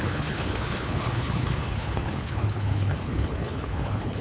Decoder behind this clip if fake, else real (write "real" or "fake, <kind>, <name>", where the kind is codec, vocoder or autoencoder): fake, codec, HILCodec